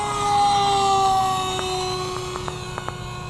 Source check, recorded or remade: recorded